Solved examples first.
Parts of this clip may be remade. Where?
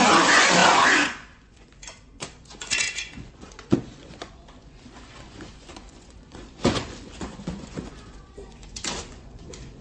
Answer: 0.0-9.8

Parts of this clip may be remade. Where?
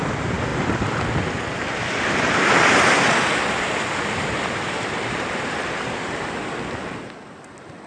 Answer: none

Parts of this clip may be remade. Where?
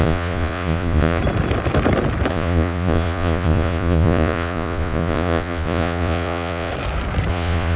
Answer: 0.0-1.2; 2.3-6.7; 7.3-7.8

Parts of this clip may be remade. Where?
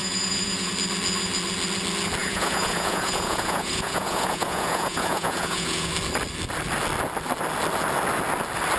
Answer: 0.0-0.7; 2.2-5.9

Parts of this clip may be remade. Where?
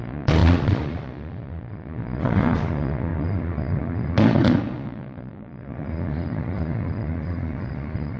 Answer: 0.0-8.2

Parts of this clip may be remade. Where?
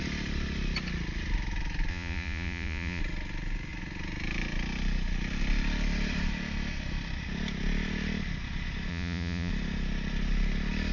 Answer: 1.9-3.0; 8.9-9.5